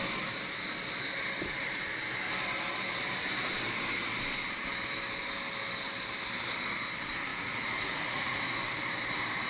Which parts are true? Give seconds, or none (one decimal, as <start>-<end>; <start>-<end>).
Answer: 0.0-7.3; 8.4-9.5